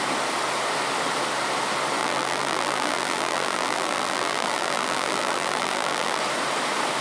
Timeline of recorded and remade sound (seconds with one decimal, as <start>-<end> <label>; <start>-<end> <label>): 0.0-2.0 recorded; 2.0-6.2 remade; 6.2-7.0 recorded